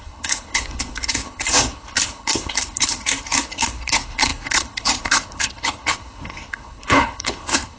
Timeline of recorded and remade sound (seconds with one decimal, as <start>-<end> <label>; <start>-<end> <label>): 0.0-7.8 remade